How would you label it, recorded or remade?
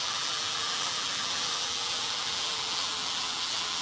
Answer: remade